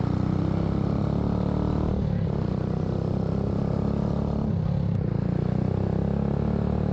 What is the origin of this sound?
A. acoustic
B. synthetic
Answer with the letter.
A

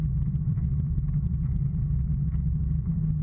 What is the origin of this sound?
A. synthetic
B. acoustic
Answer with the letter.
A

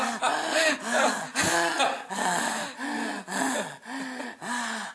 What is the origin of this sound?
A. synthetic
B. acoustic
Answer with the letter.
B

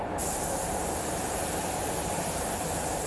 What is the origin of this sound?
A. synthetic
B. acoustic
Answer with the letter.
A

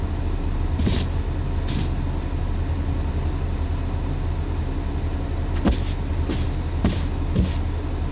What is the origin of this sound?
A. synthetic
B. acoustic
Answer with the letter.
B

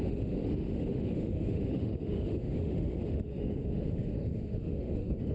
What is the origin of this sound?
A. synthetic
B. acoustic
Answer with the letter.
A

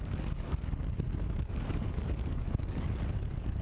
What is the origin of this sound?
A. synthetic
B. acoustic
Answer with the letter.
A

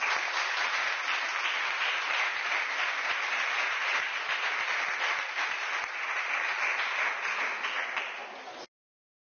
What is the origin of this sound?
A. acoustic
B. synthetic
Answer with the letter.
A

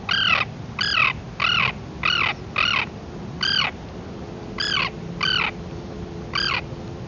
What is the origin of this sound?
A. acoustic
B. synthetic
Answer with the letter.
A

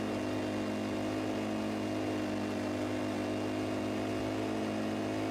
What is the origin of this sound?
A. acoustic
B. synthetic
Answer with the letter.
A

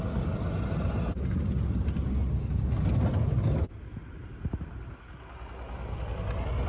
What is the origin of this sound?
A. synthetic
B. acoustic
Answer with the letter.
B